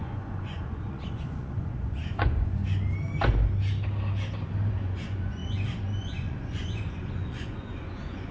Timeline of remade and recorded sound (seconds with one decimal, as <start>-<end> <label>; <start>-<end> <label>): 0.0-2.6 remade; 2.6-4.7 recorded; 4.7-8.3 remade